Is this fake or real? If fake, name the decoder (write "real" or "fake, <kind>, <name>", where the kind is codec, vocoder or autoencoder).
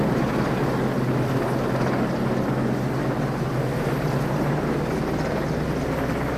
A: real